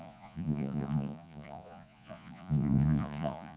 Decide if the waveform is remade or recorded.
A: remade